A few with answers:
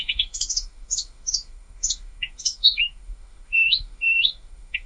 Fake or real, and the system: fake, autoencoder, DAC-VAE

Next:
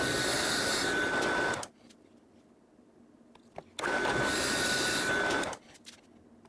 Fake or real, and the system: real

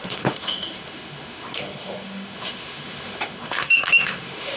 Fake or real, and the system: fake, autoencoder, DAC-VAE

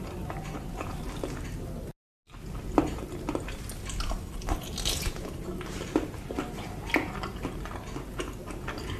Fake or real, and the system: real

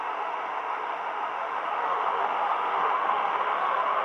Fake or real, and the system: fake, autoencoder, DAC-VAE